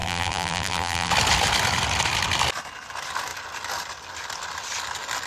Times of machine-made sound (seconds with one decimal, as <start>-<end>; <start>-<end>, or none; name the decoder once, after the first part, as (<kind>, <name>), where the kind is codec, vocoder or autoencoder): 0.0-1.1 (vocoder, BigVGAN v2)